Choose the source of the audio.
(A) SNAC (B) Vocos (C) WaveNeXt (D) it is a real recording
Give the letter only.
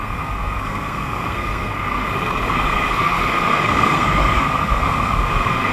A